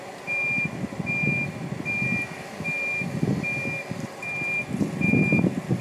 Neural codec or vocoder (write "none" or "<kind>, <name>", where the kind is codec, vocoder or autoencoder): none